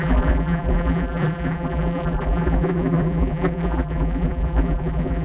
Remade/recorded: remade